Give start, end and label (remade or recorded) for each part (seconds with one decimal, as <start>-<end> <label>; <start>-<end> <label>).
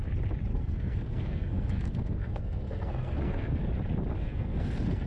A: 0.0-0.5 recorded; 0.5-3.6 remade; 3.6-4.2 recorded; 4.2-5.1 remade